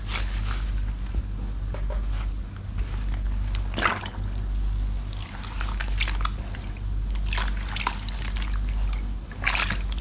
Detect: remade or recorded recorded